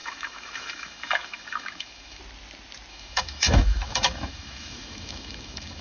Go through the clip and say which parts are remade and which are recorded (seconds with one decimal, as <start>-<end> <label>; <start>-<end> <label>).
0.0-2.2 remade; 2.2-2.9 recorded; 2.9-5.8 remade